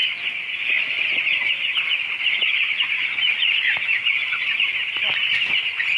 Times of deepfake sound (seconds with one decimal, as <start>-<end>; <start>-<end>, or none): none